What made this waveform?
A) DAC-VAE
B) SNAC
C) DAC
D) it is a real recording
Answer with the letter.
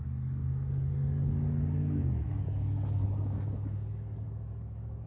C